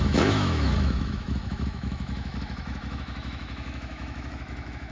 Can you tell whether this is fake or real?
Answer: fake